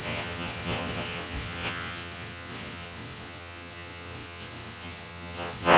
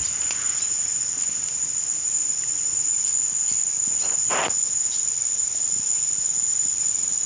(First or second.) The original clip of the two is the second